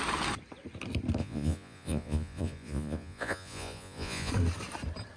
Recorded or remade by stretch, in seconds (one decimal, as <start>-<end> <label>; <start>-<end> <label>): 0.0-1.2 recorded; 1.2-4.3 remade; 4.3-5.2 recorded